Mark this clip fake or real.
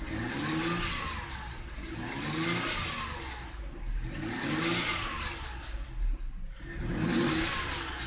real